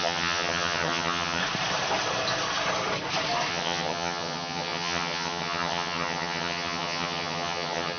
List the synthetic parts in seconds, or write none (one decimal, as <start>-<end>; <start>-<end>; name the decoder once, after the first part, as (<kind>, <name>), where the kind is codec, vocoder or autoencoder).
0.0-1.4 (vocoder, HiFi-GAN); 3.5-8.0